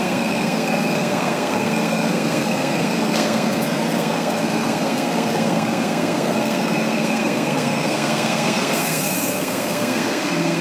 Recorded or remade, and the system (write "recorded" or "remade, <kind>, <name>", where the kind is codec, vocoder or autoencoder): remade, codec, SNAC